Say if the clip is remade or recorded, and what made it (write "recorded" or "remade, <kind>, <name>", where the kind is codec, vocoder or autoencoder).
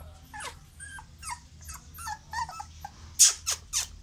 recorded